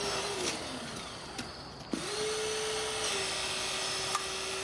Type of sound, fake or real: real